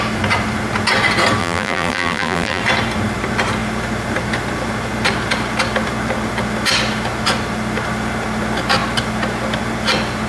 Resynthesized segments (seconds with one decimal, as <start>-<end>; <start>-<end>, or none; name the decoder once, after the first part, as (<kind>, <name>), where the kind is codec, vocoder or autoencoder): 1.4-2.6 (vocoder, BigVGAN v2)